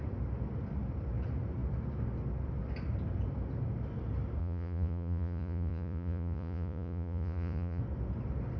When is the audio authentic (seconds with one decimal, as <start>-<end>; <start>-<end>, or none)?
0.0-4.4; 7.8-8.6